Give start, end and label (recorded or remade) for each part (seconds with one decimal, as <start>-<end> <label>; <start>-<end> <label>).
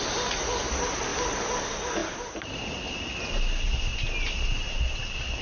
0.0-1.1 recorded; 1.1-1.6 remade; 1.6-2.0 recorded; 2.0-2.7 remade; 2.7-5.4 recorded